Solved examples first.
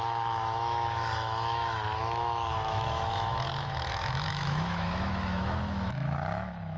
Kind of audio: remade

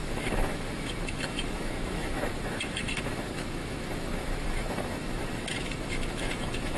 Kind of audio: remade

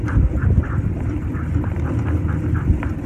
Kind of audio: recorded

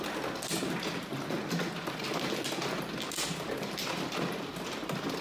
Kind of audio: recorded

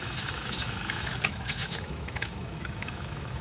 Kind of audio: remade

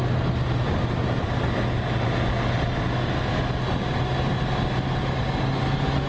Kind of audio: recorded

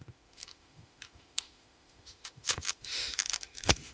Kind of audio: remade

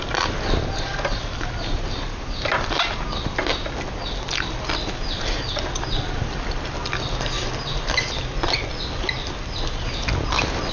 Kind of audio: recorded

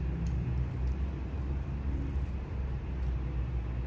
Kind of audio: recorded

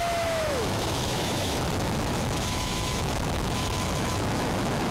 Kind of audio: remade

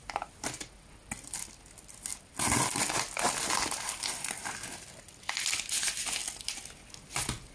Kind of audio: recorded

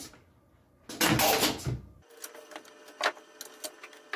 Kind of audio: recorded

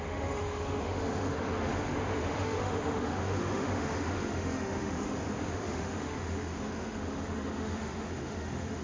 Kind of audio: remade